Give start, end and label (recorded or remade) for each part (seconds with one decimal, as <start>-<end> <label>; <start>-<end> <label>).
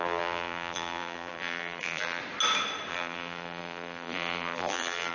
0.0-2.2 remade; 2.2-2.9 recorded; 2.9-5.1 remade